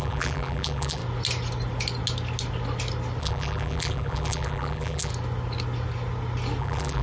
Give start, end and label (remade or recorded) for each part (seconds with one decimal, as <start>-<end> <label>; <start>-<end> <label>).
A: 0.0-1.0 remade; 1.0-3.2 recorded; 3.2-5.1 remade; 5.1-6.6 recorded; 6.6-7.0 remade